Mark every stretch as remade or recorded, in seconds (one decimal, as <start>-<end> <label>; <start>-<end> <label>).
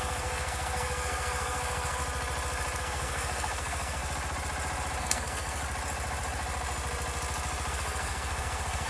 0.0-2.0 remade; 2.0-2.8 recorded; 2.8-4.0 remade; 4.0-5.0 recorded; 5.0-5.6 remade; 5.6-7.7 recorded; 7.7-8.9 remade